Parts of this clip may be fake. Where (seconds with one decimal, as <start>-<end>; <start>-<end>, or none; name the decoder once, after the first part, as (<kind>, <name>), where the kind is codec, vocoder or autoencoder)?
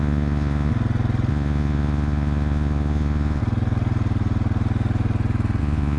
0.0-0.7 (vocoder, Vocos); 1.3-3.4; 5.6-6.0